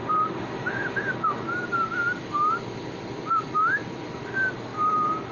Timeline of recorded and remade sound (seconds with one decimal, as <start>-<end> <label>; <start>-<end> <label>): 0.0-5.3 recorded